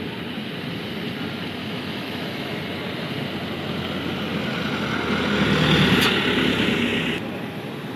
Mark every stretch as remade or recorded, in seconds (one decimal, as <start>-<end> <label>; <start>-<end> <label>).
0.0-1.6 recorded; 1.6-2.6 remade; 2.6-8.0 recorded